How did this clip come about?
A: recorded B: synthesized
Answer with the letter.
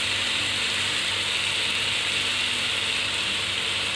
A